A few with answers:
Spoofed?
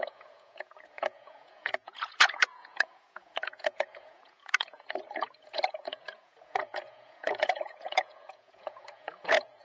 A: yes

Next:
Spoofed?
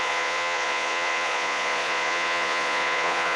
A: yes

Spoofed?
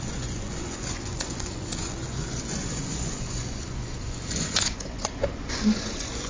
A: yes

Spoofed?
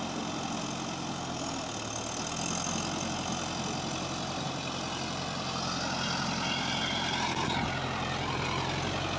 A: no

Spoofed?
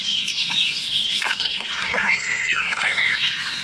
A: yes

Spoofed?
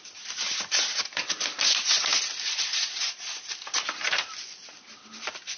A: no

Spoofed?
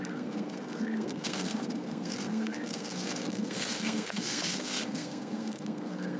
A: yes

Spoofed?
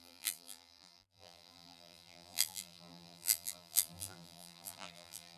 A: yes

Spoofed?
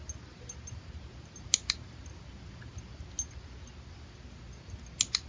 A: no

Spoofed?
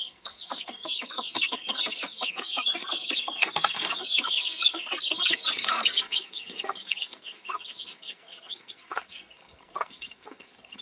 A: yes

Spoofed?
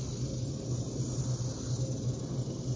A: no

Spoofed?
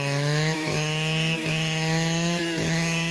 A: yes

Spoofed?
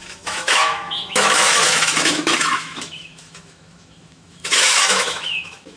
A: yes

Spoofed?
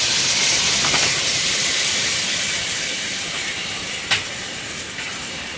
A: yes